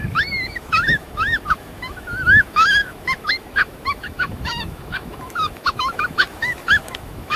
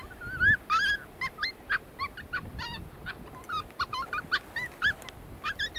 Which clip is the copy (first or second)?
first